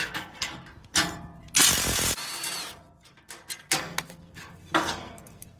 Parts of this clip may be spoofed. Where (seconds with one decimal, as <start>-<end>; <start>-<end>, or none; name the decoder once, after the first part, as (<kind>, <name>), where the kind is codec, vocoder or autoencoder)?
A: 0.0-0.5 (codec, SNAC); 3.8-5.6